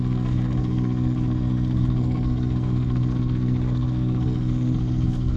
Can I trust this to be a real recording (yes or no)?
no